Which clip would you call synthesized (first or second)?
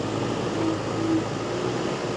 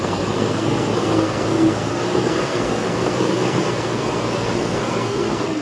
second